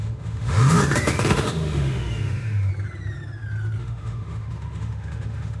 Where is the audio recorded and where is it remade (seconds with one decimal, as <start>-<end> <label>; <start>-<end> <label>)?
0.0-2.7 remade; 2.7-3.8 recorded; 3.8-5.6 remade